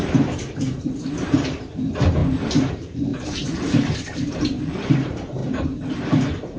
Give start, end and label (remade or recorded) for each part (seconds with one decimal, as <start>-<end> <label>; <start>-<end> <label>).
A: 0.0-6.6 remade